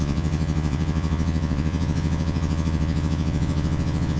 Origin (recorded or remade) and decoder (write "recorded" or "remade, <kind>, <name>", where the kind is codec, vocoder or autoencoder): remade, vocoder, Vocos